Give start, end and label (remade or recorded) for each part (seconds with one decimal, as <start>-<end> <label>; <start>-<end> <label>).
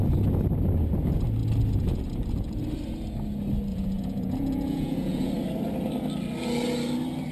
0.0-3.7 recorded; 3.7-5.3 remade; 5.3-7.3 recorded